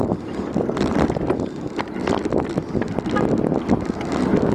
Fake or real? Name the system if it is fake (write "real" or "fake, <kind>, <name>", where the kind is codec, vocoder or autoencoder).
real